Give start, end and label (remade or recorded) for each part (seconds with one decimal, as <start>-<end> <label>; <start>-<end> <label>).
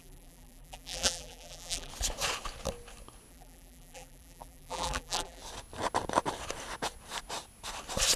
0.0-1.9 remade; 1.9-3.3 recorded; 3.3-5.4 remade; 5.4-8.2 recorded